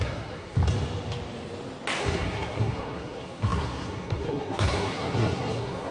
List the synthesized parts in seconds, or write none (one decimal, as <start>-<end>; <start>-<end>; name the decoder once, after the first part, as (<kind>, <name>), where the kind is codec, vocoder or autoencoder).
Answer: 0.0-0.6 (codec, SNAC); 2.0-5.9